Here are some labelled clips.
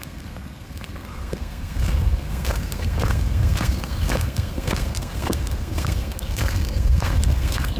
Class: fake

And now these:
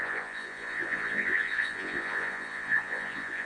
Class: fake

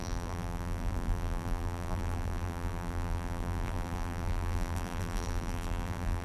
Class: fake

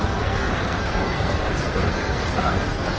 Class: fake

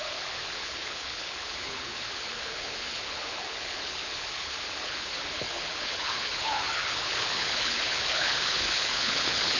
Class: fake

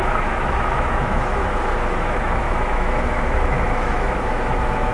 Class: fake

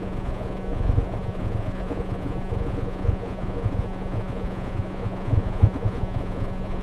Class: fake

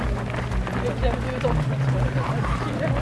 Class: real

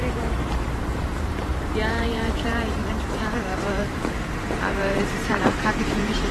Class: fake